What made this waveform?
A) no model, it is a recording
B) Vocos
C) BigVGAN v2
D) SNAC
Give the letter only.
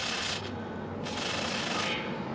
A